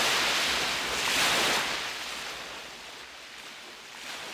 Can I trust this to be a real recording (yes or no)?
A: yes